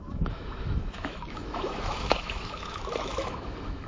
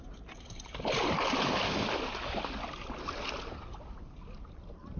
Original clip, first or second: second